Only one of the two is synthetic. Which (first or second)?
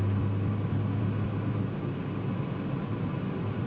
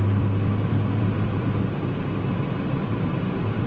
second